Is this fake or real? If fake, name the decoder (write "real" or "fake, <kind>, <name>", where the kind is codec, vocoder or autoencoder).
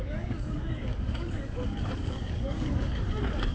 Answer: fake, codec, DAC